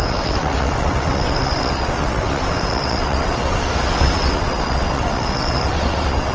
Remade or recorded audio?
remade